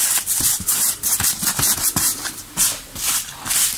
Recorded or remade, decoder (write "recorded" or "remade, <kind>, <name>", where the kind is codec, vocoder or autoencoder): remade, vocoder, BigVGAN v2